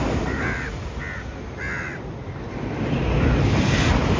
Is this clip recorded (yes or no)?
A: yes